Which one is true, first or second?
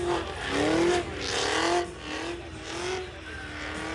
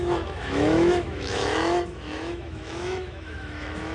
first